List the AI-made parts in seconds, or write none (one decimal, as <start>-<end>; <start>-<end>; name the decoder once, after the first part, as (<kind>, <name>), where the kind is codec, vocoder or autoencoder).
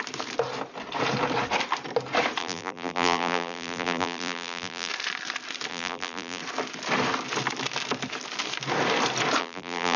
2.4-4.9 (vocoder, BigVGAN v2); 5.7-6.4; 9.4-10.0